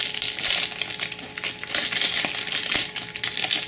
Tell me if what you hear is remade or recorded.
recorded